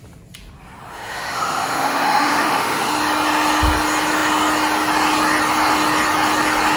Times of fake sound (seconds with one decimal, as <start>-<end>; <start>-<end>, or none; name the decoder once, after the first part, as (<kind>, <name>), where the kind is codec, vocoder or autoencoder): 0.9-2.9 (autoencoder, DAC-VAE)